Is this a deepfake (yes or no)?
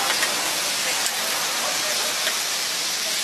no